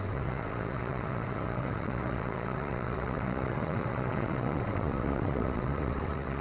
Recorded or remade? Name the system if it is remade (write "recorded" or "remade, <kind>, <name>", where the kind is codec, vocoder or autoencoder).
remade, vocoder, WaveNeXt